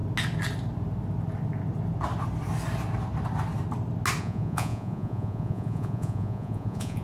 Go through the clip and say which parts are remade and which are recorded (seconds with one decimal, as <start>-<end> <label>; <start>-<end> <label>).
0.0-4.2 recorded; 4.2-7.0 remade